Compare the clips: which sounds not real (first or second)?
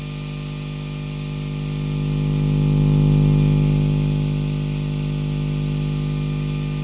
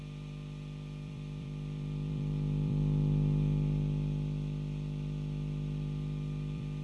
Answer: second